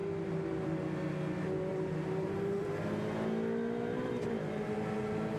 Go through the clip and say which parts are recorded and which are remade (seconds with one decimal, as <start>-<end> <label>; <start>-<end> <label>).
0.0-1.7 recorded; 1.7-2.7 remade; 2.7-5.4 recorded